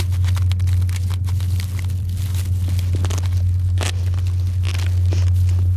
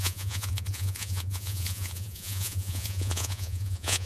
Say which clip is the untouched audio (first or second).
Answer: first